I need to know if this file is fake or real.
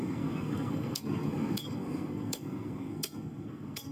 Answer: fake